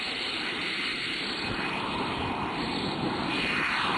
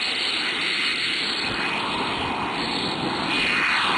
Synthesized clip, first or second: first